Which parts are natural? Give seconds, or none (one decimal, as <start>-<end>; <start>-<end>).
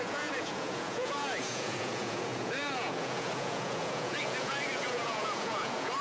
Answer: none